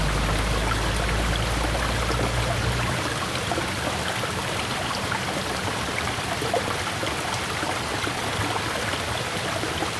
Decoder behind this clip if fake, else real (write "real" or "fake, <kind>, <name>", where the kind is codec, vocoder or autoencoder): real